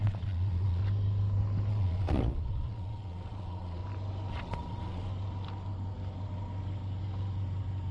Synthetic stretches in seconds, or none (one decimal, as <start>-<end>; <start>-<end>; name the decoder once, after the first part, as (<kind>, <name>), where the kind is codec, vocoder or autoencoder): 0.0-0.8 (vocoder, Vocos); 1.7-3.8; 4.3-5.1